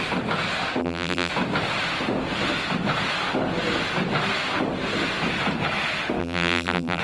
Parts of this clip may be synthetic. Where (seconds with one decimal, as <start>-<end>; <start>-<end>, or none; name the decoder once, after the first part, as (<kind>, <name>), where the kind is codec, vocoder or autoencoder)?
0.8-1.3 (vocoder, BigVGAN v2); 6.2-7.0